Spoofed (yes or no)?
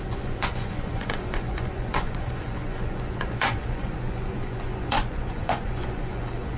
yes